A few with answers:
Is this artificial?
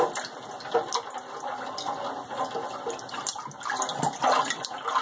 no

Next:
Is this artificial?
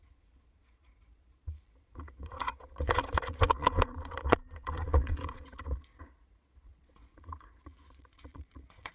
yes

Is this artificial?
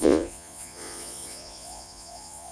yes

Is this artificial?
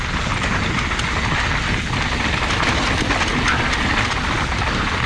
no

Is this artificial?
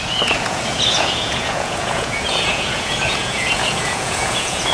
yes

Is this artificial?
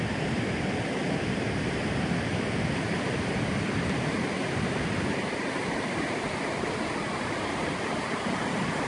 no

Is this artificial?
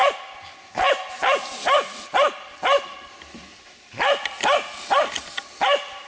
no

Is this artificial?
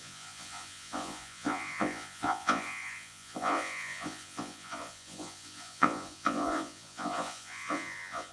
yes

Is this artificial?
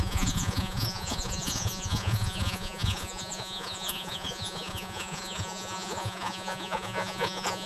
yes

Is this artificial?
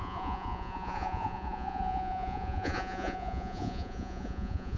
yes